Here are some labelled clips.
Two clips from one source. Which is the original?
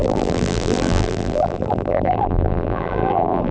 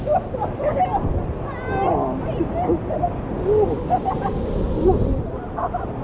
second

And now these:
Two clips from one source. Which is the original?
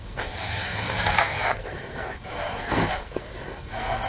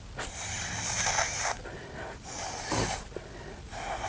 second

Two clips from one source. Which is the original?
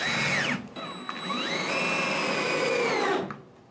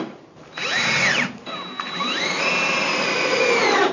first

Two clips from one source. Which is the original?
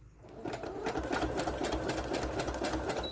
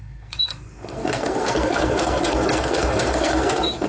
first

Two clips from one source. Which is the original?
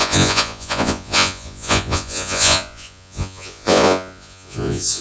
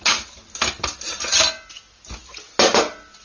second